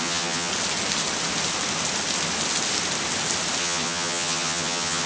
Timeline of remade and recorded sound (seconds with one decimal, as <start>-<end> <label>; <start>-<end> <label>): 0.0-0.5 remade; 0.5-3.6 recorded; 3.6-5.1 remade